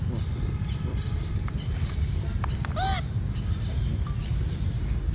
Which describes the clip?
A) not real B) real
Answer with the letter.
A